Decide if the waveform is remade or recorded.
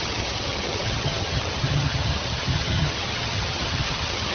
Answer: remade